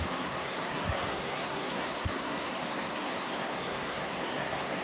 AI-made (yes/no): yes